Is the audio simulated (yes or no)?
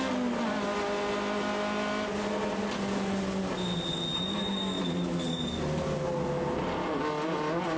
no